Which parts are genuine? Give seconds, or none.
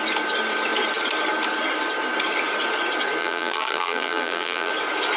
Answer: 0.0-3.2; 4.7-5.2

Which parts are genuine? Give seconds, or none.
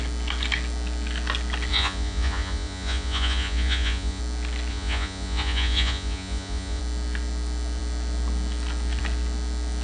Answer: 0.0-1.7; 4.2-4.7; 6.8-9.8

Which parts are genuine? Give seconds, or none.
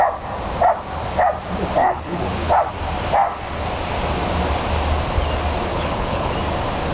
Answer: 0.0-1.8; 2.5-5.7; 6.3-6.9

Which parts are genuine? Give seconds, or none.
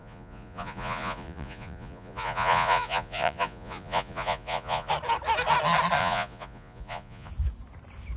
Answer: 4.9-6.0; 7.3-8.2